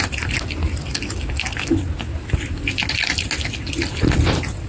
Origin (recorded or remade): recorded